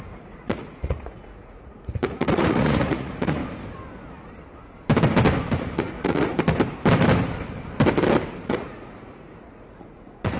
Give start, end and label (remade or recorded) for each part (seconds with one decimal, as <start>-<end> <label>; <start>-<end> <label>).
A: 0.0-3.4 remade; 3.4-5.5 recorded; 5.5-6.3 remade; 6.3-8.4 recorded; 8.4-10.4 remade